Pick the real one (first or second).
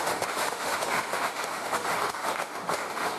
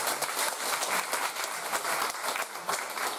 second